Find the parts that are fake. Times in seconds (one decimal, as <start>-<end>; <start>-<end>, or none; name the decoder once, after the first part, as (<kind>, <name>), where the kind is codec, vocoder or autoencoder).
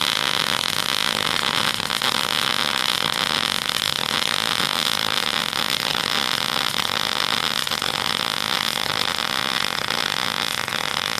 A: none